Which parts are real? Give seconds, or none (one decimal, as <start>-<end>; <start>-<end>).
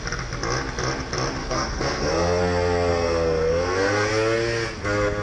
0.0-1.4; 2.4-2.9; 4.1-5.2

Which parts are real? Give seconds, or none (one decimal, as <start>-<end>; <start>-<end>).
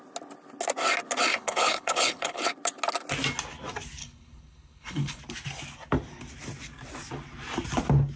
0.0-1.3; 2.4-4.0; 5.2-8.2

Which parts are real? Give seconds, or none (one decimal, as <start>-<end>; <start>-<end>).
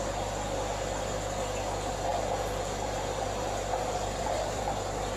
0.0-2.1